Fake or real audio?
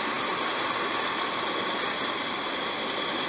real